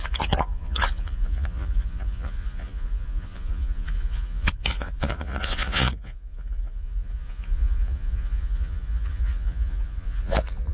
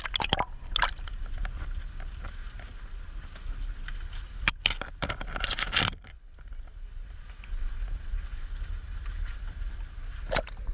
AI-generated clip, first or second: first